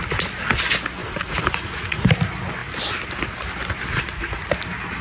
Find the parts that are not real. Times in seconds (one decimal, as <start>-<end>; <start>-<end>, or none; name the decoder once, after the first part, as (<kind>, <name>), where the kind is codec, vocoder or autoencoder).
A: 1.0-2.1 (vocoder, Vocos); 3.9-4.5